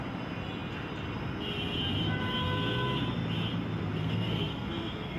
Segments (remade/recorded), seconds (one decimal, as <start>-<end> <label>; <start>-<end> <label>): 0.0-4.0 recorded; 4.0-5.2 remade